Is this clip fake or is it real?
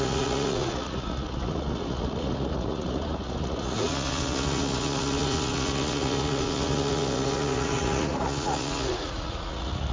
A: fake